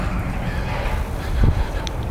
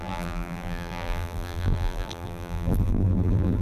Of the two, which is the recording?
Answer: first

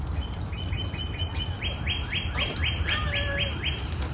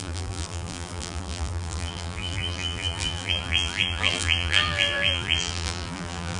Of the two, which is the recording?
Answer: first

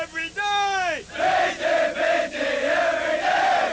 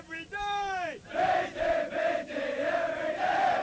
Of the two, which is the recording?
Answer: first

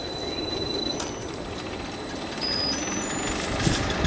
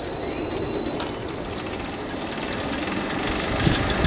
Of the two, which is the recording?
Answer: second